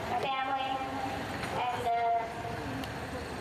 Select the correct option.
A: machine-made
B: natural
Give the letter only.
B